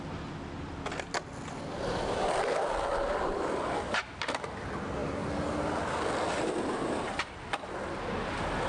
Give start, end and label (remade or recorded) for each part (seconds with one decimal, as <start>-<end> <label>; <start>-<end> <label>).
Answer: 0.0-8.7 recorded

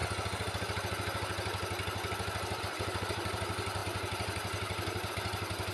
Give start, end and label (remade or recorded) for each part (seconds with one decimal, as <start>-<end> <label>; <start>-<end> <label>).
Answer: 0.0-2.6 recorded; 2.6-5.7 remade